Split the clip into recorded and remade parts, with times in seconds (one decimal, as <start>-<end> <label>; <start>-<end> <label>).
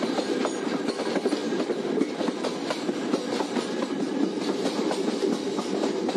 0.0-6.2 recorded